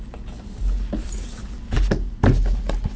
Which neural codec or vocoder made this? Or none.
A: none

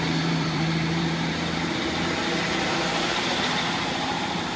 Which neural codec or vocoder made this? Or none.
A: vocoder, BigVGAN v2